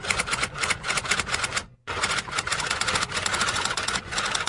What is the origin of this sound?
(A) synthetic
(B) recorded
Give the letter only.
A